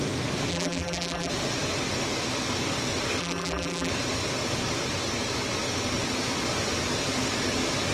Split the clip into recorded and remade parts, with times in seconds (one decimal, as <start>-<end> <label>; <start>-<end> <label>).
0.0-0.5 recorded; 0.5-1.3 remade; 1.3-3.2 recorded; 3.2-3.9 remade; 3.9-7.9 recorded